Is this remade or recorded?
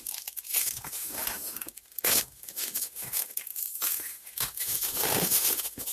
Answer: remade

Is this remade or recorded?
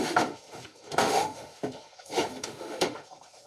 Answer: remade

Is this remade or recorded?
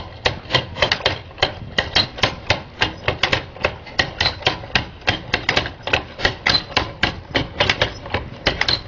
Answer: recorded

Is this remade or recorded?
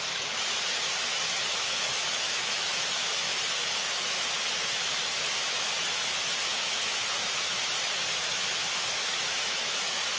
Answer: remade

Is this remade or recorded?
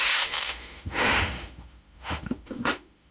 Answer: remade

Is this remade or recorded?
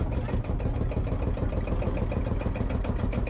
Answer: recorded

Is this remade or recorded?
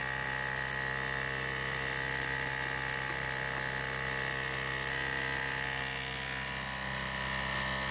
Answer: recorded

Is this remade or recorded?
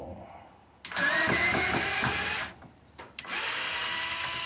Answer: recorded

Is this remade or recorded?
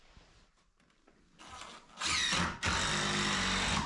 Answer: recorded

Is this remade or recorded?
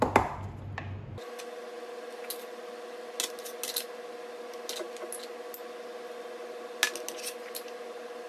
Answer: recorded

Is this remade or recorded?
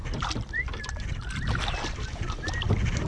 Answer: recorded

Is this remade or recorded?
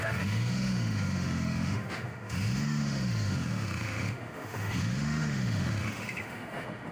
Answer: remade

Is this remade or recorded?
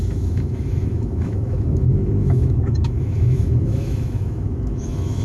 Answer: remade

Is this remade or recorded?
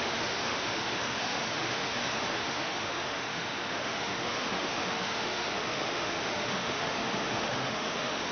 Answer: remade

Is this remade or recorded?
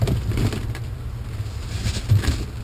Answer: recorded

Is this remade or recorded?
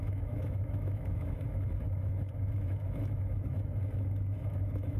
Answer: remade